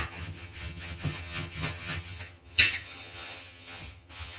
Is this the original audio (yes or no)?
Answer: no